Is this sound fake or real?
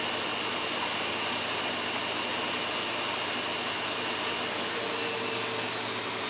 real